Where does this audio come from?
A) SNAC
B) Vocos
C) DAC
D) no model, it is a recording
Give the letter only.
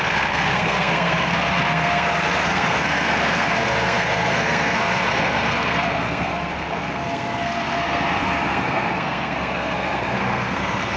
A